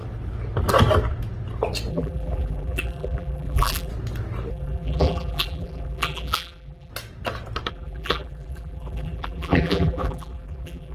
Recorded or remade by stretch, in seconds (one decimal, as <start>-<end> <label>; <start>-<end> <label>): 0.0-1.9 recorded; 1.9-3.9 remade; 3.9-4.5 recorded; 4.5-6.9 remade; 6.9-7.7 recorded; 7.7-10.9 remade